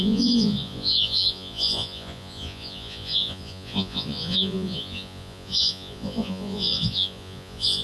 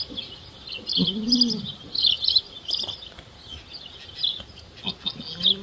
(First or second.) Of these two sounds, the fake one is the first